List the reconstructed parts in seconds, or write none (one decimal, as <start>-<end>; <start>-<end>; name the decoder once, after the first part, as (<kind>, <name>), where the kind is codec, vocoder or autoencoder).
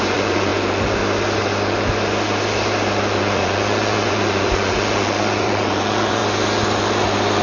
0.0-0.5 (vocoder, Vocos); 3.2-6.2